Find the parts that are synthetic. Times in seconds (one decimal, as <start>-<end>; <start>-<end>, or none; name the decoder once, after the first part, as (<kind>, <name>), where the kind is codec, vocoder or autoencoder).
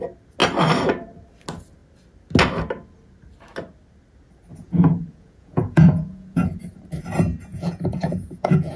4.5-6.6 (vocoder, Vocos); 7.5-8.8